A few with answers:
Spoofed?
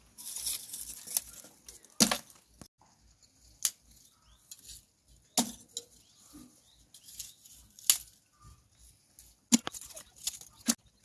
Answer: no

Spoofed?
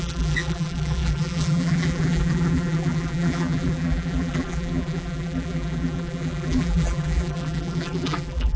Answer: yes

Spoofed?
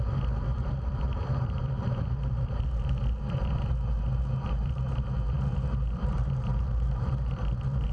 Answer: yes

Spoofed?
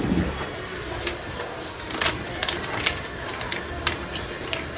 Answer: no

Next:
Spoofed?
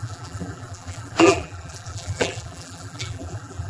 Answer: yes